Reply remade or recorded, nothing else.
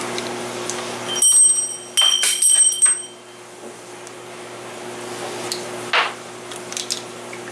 recorded